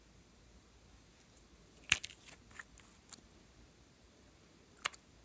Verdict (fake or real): real